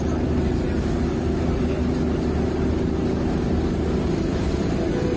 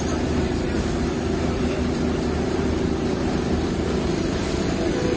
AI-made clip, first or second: second